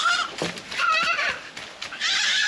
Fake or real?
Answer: real